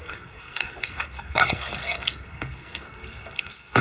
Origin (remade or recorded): remade